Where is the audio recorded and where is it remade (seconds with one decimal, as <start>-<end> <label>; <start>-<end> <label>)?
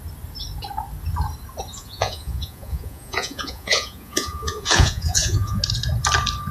0.0-1.7 recorded; 1.7-5.6 remade; 5.6-6.5 recorded